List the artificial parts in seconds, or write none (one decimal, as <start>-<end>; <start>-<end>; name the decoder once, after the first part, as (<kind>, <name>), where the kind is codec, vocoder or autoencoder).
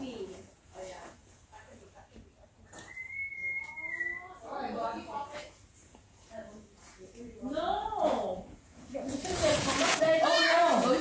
0.0-1.5 (vocoder, Vocos); 4.6-11.0